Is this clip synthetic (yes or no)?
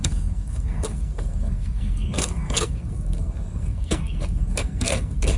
yes